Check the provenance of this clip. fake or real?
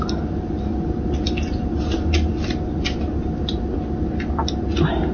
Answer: real